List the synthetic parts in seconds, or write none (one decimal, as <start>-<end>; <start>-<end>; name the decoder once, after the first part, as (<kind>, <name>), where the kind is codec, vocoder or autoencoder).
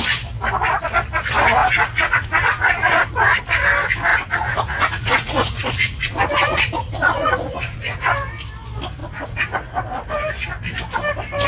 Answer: 1.6-3.4 (vocoder, Vocos); 4.1-8.0; 9.0-9.8